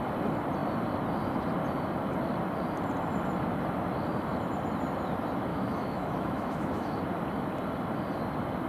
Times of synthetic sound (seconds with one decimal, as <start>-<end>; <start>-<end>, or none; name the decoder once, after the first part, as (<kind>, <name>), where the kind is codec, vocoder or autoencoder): 5.5-7.0 (autoencoder, DAC-VAE)